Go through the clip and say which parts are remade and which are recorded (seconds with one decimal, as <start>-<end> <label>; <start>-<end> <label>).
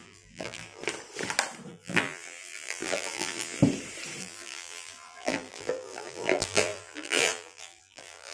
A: 0.0-0.8 remade; 0.8-1.7 recorded; 1.7-3.6 remade; 3.6-4.2 recorded; 4.2-8.3 remade